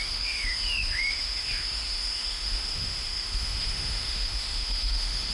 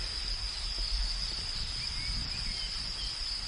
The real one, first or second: second